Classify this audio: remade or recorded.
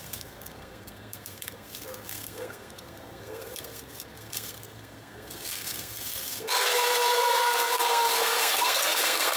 remade